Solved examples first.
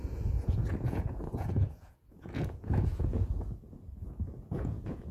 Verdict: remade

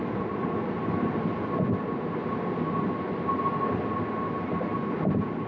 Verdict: recorded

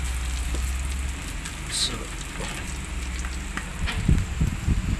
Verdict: recorded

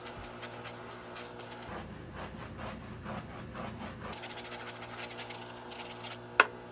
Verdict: recorded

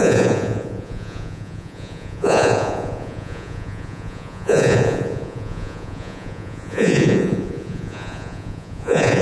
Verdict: remade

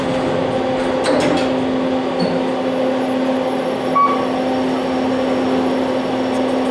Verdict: recorded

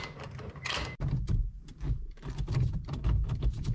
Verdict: recorded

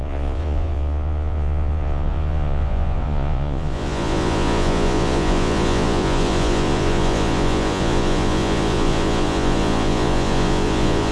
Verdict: remade